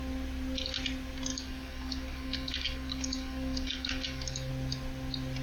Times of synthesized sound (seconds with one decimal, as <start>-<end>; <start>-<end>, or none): 1.3-4.5